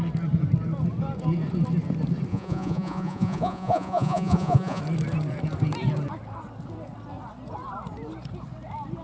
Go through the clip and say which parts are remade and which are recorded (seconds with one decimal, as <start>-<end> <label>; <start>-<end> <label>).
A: 0.0-2.3 recorded; 2.3-4.8 remade; 4.8-9.0 recorded